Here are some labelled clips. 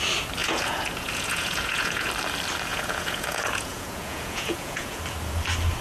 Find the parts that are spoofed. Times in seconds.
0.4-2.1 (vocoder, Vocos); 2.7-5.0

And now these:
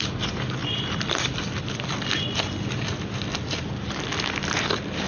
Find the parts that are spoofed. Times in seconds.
0.6-1.6 (vocoder, BigVGAN v2)

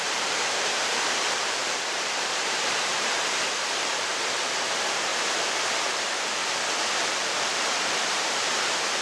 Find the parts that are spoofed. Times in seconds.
0.0-5.1 (vocoder, BigVGAN v2); 5.8-6.4; 7.0-9.0

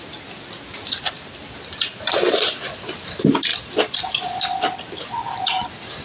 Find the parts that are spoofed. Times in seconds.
none

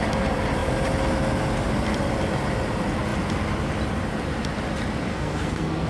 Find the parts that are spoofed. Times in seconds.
5.1-5.9 (codec, SNAC)